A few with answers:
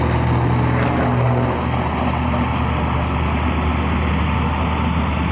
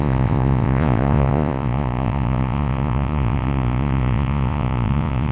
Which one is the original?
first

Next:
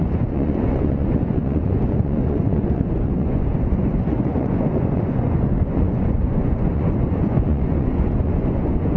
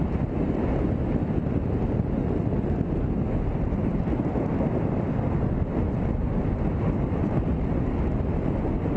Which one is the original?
second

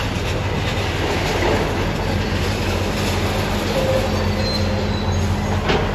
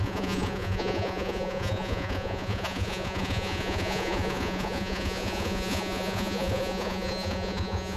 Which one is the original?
first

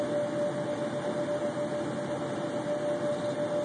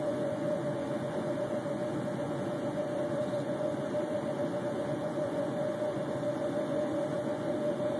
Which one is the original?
first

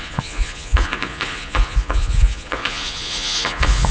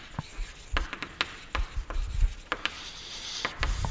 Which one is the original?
second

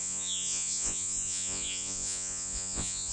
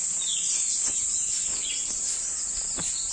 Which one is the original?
second